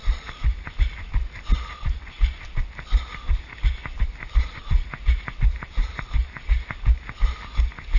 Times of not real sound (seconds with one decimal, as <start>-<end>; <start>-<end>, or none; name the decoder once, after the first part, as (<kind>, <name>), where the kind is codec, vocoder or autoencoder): none